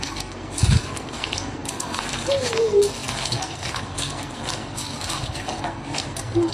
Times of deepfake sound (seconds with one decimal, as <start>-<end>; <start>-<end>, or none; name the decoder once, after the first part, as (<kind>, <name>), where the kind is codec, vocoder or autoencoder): 0.0-6.5 (codec, SNAC)